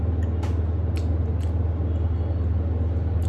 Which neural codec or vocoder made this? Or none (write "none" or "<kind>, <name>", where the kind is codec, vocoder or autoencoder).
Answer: none